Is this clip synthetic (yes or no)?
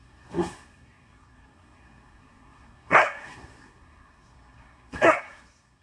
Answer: yes